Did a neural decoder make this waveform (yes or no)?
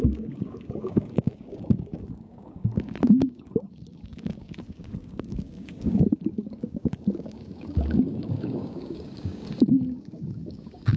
yes